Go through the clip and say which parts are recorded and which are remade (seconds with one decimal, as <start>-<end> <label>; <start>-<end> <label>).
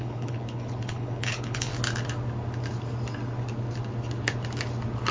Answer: 0.0-1.7 remade; 1.7-5.1 recorded